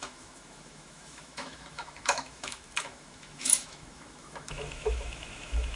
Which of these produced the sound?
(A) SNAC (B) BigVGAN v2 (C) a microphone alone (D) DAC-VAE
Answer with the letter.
D